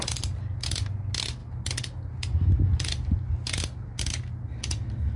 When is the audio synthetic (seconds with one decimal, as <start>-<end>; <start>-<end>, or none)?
none